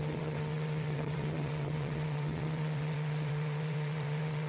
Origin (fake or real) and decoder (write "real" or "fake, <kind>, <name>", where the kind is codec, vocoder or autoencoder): fake, vocoder, WaveNeXt